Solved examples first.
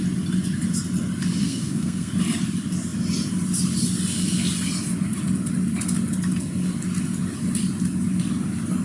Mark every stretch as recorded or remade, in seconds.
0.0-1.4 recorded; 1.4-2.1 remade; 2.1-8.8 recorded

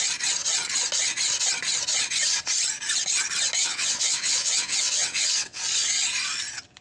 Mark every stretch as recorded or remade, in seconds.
0.0-3.6 recorded; 3.6-5.6 remade; 5.6-6.8 recorded

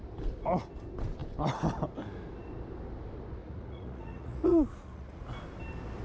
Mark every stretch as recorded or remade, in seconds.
0.0-3.4 recorded; 3.4-5.2 remade; 5.2-6.0 recorded

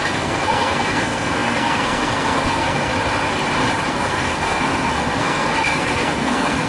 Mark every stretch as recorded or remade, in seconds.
0.0-2.9 remade; 2.9-3.9 recorded; 3.9-6.7 remade

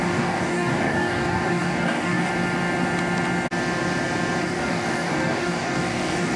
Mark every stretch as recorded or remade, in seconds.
0.0-2.3 remade; 2.3-4.4 recorded; 4.4-6.4 remade

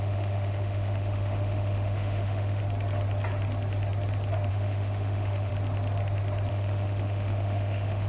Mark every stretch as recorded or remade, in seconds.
0.0-2.6 remade; 2.6-4.5 recorded; 4.5-5.5 remade; 5.5-6.5 recorded; 6.5-8.1 remade